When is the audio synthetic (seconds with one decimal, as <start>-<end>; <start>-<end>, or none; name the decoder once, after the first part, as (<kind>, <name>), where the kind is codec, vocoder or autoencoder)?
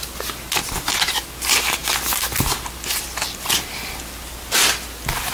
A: none